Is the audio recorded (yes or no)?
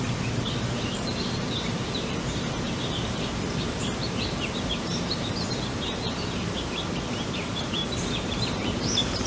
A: no